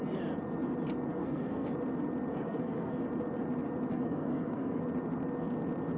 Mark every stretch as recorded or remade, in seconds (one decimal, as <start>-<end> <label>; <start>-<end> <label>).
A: 0.0-1.2 recorded; 1.2-1.7 remade; 1.7-2.3 recorded; 2.3-2.9 remade; 2.9-3.9 recorded; 3.9-4.8 remade; 4.8-6.0 recorded